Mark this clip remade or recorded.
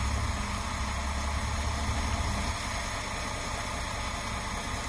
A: recorded